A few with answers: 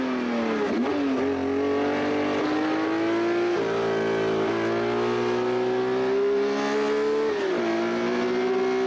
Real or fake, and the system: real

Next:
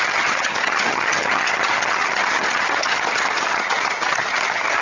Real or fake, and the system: fake, vocoder, HiFi-GAN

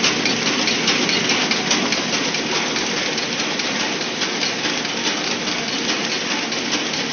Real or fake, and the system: real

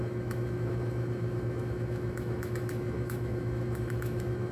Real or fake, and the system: fake, autoencoder, DAC-VAE